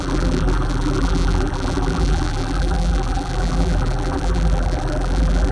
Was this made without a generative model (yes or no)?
no